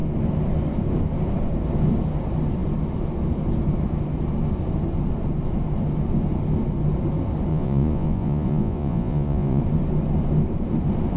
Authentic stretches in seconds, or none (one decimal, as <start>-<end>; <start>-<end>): 0.0-7.5; 9.6-11.2